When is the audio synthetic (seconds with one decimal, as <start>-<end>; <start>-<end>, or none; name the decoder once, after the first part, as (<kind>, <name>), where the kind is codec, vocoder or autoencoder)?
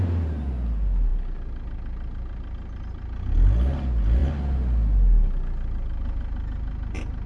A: none